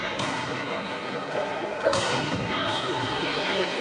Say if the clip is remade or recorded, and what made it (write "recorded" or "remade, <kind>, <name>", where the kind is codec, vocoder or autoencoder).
remade, codec, SNAC